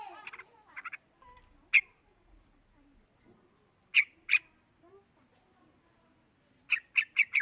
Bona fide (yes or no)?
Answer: yes